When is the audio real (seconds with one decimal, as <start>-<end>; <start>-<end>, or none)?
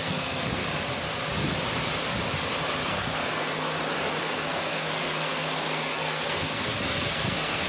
0.7-2.8; 3.8-4.2